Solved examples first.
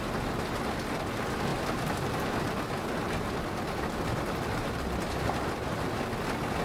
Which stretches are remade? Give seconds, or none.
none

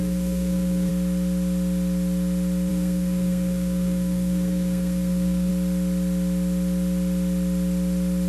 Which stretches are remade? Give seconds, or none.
0.0-0.9 (codec, SNAC); 2.7-5.5